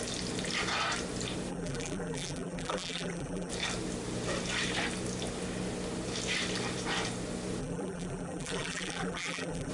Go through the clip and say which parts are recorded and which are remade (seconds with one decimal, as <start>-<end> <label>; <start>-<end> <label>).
0.0-1.5 recorded; 1.5-3.5 remade; 3.5-7.6 recorded; 7.6-9.7 remade

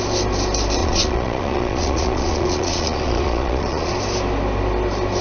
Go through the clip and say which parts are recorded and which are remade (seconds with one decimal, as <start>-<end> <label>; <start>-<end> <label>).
0.0-0.8 recorded; 0.8-3.9 remade; 3.9-5.2 recorded

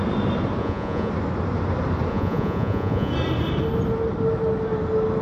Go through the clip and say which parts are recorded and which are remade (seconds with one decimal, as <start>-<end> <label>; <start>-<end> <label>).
0.0-0.6 recorded; 0.6-1.1 remade; 1.1-2.1 recorded; 2.1-3.1 remade; 3.1-5.2 recorded

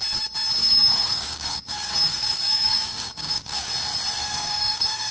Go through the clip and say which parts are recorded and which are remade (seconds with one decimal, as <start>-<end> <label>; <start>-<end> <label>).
0.0-0.6 recorded; 0.6-3.7 remade; 3.7-4.2 recorded; 4.2-5.1 remade

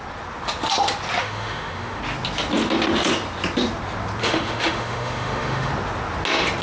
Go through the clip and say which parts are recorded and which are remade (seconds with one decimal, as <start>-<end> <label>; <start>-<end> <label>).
0.0-1.2 recorded; 1.2-2.0 remade; 2.0-4.2 recorded; 4.2-5.7 remade; 5.7-6.6 recorded

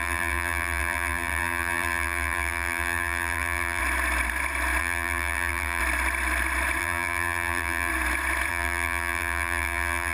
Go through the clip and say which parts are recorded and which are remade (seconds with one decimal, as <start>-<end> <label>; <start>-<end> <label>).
0.0-3.8 remade; 3.8-4.8 recorded; 4.8-5.8 remade; 5.8-6.8 recorded; 6.8-7.9 remade; 7.9-8.5 recorded; 8.5-10.1 remade